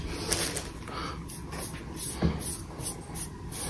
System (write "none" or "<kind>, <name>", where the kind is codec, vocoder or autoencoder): none